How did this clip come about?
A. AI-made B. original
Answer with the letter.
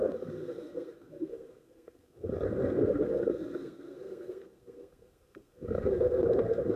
A